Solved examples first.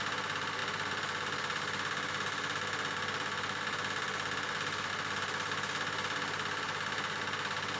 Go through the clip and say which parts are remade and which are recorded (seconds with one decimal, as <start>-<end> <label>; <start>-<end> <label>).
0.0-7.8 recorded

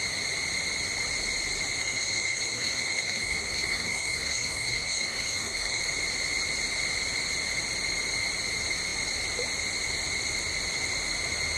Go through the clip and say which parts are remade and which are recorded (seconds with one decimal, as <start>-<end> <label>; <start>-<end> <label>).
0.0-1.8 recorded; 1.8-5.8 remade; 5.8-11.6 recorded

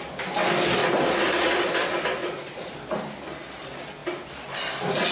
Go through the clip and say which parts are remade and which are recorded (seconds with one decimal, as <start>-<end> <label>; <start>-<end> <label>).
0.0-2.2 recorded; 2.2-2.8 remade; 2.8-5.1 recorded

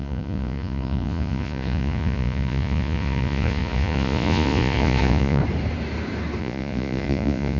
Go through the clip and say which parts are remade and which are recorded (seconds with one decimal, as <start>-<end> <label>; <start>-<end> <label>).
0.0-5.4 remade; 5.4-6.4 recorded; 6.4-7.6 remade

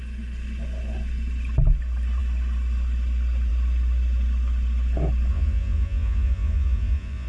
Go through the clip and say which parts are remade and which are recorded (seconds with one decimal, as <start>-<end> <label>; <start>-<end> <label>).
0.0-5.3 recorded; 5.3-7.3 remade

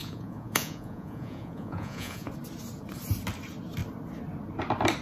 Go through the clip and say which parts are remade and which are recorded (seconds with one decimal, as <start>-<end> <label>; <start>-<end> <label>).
0.0-2.3 remade; 2.3-5.0 recorded